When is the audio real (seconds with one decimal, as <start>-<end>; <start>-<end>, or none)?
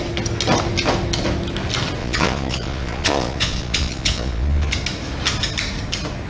0.0-2.0; 4.7-6.3